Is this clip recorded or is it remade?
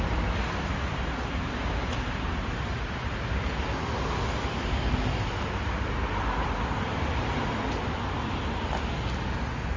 recorded